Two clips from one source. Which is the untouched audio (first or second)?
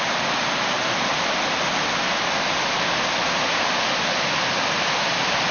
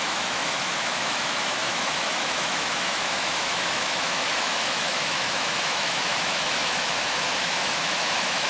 first